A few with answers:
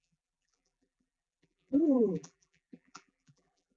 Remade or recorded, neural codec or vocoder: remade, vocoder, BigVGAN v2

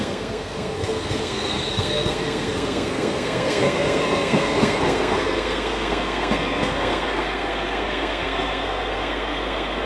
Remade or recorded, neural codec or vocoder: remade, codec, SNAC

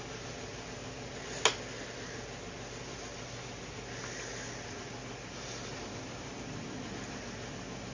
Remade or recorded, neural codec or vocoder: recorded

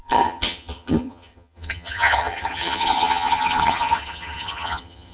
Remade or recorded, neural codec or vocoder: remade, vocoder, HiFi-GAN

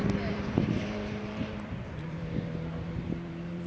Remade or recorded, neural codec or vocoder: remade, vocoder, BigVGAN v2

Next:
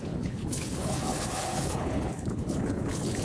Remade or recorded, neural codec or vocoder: remade, codec, HILCodec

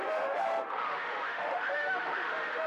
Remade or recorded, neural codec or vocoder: remade, autoencoder, DAC-VAE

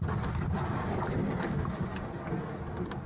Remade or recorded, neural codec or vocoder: recorded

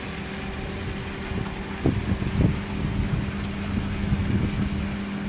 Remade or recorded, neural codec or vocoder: recorded